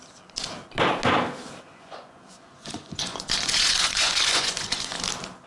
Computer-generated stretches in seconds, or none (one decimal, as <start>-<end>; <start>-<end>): 1.7-5.0